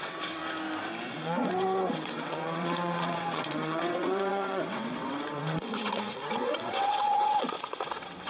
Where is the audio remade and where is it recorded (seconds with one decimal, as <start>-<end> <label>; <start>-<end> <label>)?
0.0-0.4 remade; 0.4-1.1 recorded; 1.1-8.3 remade